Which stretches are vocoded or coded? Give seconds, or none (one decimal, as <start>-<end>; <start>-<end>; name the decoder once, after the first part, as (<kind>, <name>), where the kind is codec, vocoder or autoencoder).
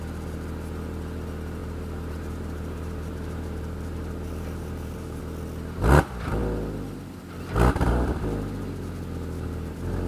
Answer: 1.6-5.2 (vocoder, BigVGAN v2)